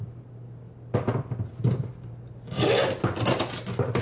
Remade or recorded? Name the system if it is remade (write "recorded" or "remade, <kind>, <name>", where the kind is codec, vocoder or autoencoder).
recorded